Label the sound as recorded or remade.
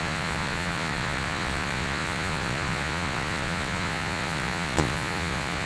remade